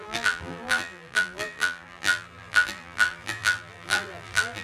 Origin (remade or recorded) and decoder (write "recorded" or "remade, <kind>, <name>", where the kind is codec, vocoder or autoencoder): remade, vocoder, BigVGAN v2